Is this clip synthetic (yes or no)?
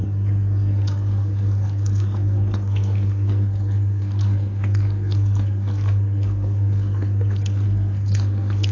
yes